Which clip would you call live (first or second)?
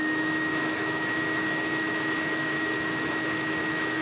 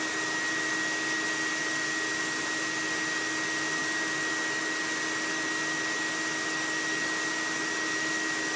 second